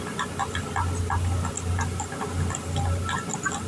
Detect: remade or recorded recorded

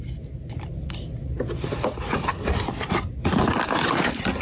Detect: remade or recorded recorded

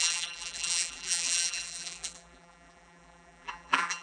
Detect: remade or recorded remade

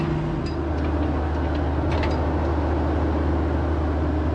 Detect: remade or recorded recorded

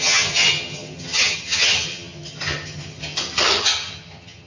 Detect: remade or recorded remade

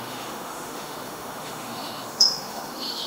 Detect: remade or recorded remade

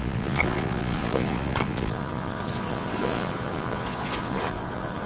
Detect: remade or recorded remade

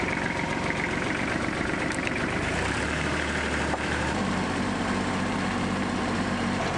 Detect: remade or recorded remade